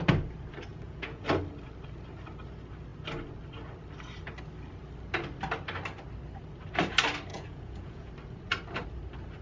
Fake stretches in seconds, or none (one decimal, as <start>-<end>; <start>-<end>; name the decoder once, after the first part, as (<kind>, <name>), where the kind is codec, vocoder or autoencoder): 0.7-1.2 (vocoder, Vocos); 7.3-8.1